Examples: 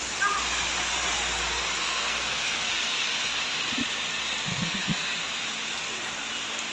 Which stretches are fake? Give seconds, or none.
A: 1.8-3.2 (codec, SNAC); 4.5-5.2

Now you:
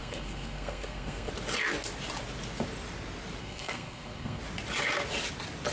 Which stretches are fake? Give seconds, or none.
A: 0.0-1.3 (codec, SNAC); 3.4-4.4

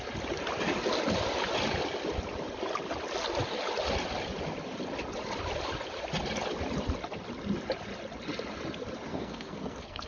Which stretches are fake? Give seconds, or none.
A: 9.1-10.1 (codec, SNAC)